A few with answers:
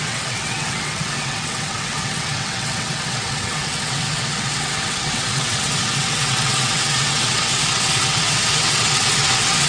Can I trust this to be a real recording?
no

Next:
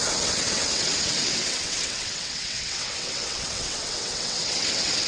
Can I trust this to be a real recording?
no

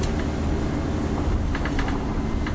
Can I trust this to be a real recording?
yes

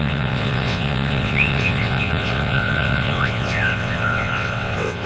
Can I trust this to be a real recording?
no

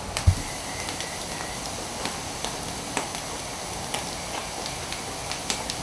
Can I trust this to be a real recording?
yes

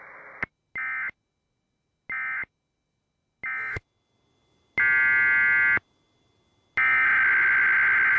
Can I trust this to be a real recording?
yes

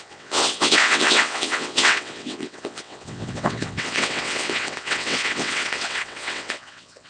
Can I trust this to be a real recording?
no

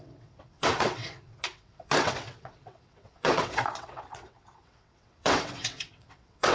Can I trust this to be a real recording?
no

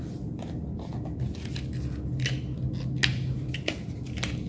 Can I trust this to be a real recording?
yes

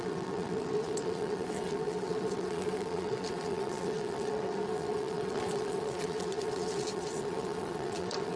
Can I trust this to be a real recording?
no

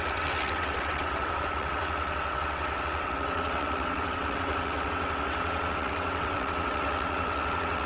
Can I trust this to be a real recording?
no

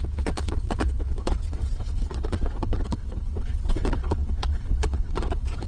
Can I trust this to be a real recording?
no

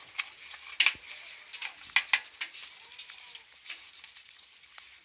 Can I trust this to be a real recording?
yes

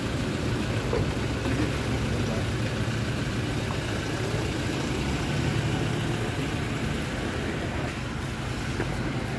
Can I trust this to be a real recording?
yes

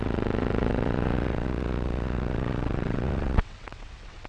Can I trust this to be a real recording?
no